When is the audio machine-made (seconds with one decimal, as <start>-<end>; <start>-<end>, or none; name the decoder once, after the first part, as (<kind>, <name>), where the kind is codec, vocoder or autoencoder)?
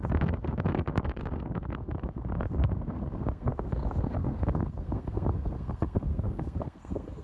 0.0-7.2 (codec, SNAC)